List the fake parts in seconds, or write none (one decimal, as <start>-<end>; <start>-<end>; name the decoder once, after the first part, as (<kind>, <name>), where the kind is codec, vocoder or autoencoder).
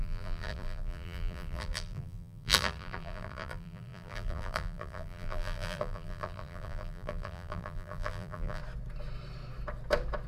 0.0-8.6 (vocoder, BigVGAN v2)